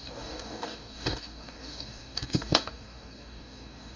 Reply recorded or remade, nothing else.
remade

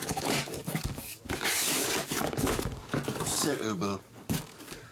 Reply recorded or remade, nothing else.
remade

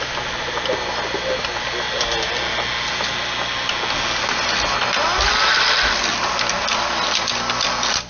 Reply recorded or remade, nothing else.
recorded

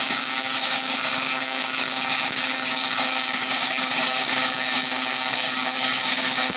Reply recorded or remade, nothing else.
remade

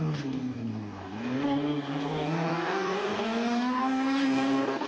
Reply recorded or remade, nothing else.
remade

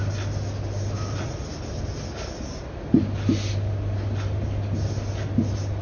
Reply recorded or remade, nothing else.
recorded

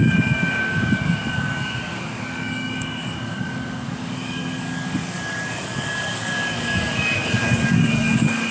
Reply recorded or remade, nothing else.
remade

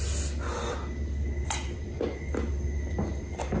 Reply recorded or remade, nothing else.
recorded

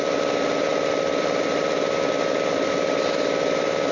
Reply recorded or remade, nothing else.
recorded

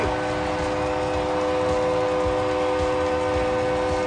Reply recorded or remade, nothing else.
recorded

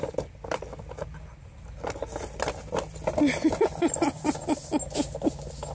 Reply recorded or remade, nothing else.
recorded